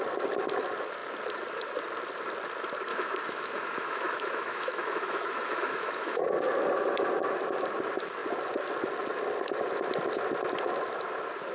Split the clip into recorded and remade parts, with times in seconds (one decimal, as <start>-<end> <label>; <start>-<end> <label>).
0.0-2.9 recorded; 2.9-6.2 remade; 6.2-11.5 recorded